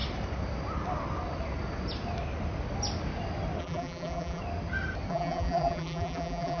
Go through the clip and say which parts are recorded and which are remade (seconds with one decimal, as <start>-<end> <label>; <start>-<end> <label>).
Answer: 0.0-3.6 recorded; 3.6-4.4 remade; 4.4-5.1 recorded; 5.1-6.6 remade